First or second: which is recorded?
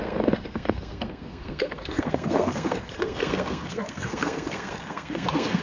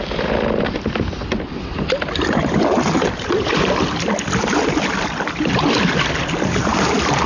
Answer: second